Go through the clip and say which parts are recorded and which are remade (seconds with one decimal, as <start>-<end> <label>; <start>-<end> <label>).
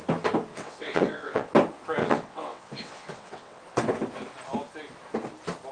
0.0-0.5 recorded; 0.5-1.5 remade; 1.5-2.0 recorded; 2.0-3.6 remade; 3.6-5.7 recorded